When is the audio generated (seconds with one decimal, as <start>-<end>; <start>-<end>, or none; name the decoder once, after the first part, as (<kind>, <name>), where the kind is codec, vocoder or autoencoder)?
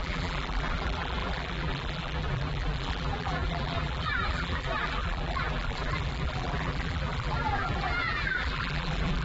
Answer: 0.0-9.2 (vocoder, BigVGAN v2)